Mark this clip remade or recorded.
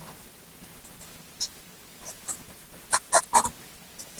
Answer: recorded